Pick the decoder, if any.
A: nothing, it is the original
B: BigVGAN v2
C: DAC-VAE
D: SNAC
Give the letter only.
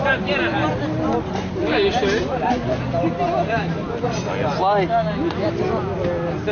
A